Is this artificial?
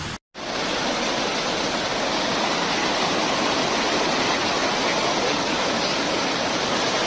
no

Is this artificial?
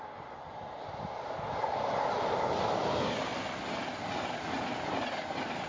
no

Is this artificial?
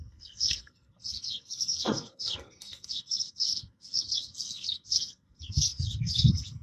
yes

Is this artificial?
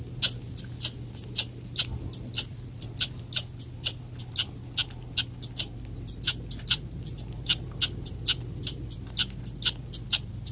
no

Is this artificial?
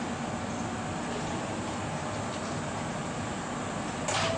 no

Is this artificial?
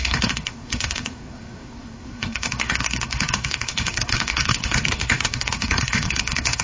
yes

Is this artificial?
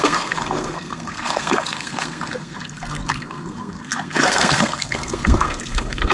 yes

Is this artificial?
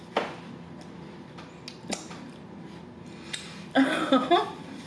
no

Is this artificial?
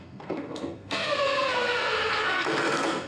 yes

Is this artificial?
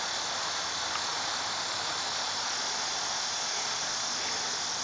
no